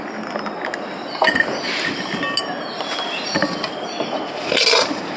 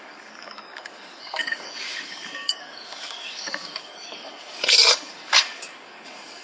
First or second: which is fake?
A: second